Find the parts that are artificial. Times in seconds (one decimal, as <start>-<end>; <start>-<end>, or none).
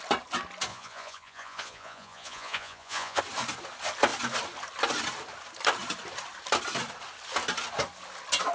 0.7-3.2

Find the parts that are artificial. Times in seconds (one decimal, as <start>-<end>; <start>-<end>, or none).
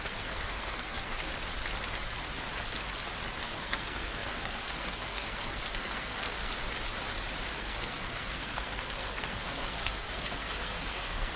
0.0-1.3; 3.4-6.5; 7.5-11.4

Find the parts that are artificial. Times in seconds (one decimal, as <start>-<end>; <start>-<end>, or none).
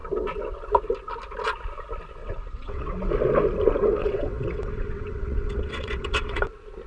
2.2-3.1; 4.0-6.5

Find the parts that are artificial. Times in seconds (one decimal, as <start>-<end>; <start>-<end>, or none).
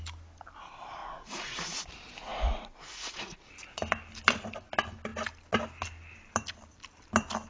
1.0-1.8; 2.3-3.5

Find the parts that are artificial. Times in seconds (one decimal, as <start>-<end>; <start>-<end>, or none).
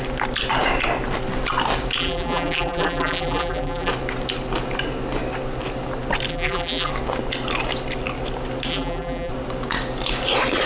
2.0-3.9; 6.3-6.9; 8.7-9.3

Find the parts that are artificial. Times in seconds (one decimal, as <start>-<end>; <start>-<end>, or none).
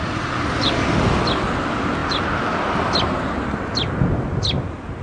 none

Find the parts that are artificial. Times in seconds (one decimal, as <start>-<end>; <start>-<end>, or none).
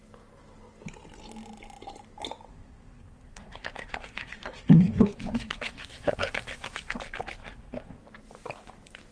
2.5-7.0; 7.4-8.0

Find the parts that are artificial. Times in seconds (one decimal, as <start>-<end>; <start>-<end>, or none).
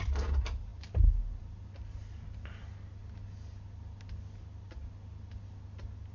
none